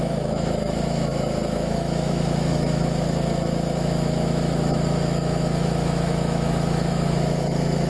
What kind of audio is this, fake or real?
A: fake